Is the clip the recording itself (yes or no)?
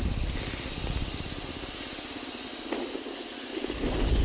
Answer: yes